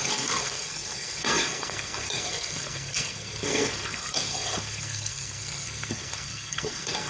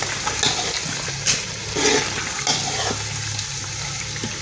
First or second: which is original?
second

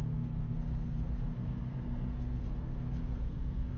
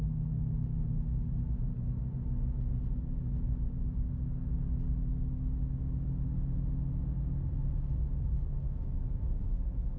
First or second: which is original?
second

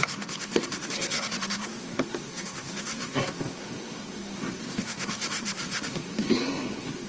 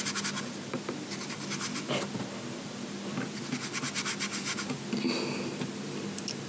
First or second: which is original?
second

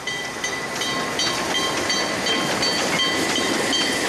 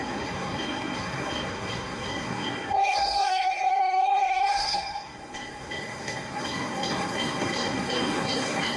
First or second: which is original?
first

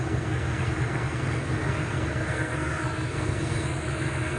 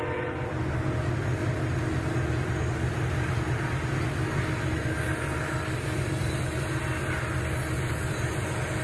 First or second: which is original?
second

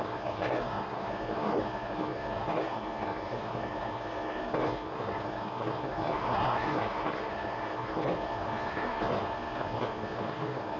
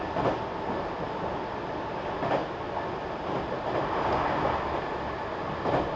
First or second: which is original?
second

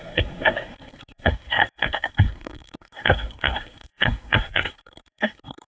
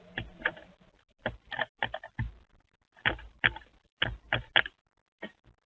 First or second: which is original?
second